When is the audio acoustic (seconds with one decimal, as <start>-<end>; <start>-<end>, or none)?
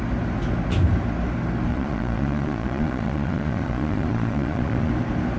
0.0-1.7; 4.9-5.4